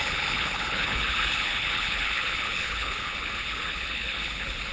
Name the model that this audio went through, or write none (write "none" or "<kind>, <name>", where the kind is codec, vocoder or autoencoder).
codec, HILCodec